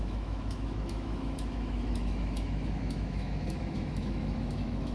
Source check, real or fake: fake